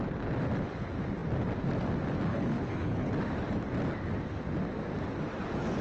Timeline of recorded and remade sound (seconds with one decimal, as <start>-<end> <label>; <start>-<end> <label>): 0.0-2.3 recorded; 2.3-3.1 remade; 3.1-5.8 recorded